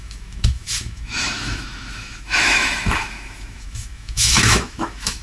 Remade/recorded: remade